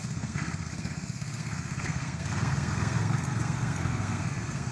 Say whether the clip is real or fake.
fake